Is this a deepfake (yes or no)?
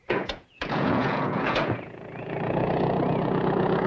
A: yes